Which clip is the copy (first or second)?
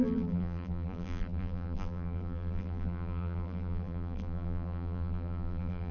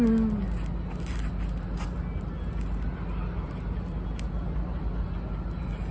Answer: first